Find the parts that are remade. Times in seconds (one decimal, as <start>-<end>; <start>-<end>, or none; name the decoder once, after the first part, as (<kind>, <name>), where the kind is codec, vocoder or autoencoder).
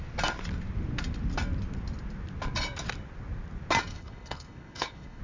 3.9-5.2 (codec, HILCodec)